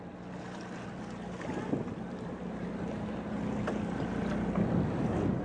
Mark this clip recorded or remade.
recorded